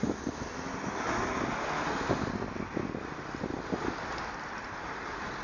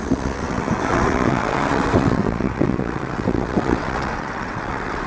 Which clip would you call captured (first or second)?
first